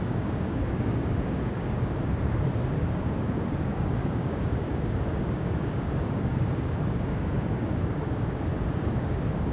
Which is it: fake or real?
fake